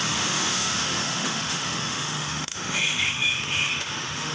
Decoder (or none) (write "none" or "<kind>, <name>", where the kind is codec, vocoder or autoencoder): autoencoder, DAC-VAE